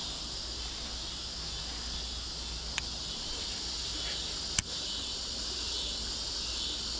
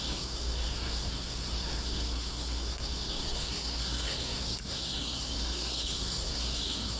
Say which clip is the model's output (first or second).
second